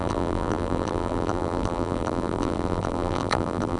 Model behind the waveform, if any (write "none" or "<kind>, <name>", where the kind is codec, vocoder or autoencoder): vocoder, BigVGAN v2